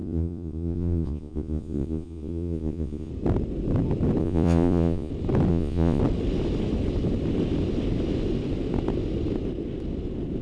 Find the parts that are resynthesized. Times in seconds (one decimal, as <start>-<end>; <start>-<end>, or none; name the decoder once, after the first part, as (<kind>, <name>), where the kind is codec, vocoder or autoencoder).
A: 0.0-3.1 (vocoder, Vocos); 4.2-5.1; 5.5-6.0